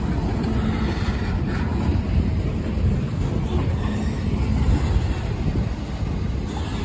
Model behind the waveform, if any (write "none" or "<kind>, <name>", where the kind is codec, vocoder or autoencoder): none